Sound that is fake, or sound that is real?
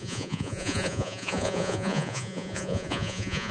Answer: fake